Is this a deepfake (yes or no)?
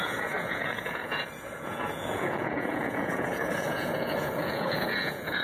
yes